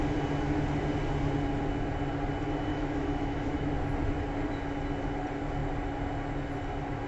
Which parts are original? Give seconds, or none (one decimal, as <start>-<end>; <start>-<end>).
0.0-2.7; 3.7-7.1